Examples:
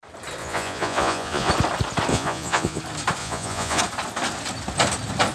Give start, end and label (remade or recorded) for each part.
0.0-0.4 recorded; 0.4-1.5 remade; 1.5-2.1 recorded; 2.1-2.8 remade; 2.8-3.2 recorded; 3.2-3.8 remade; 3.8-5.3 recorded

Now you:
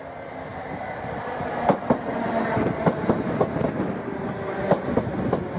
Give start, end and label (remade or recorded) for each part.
0.0-5.6 recorded

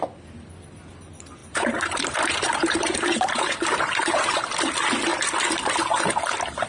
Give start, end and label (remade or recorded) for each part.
0.0-1.4 recorded; 1.4-4.5 remade; 4.5-6.7 recorded

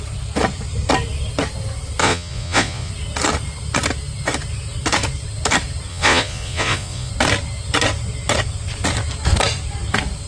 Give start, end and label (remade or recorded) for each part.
0.0-2.0 recorded; 2.0-2.9 remade; 2.9-5.9 recorded; 5.9-7.1 remade; 7.1-10.3 recorded

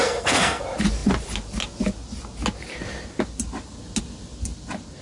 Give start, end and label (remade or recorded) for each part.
0.0-0.6 remade; 0.6-5.0 recorded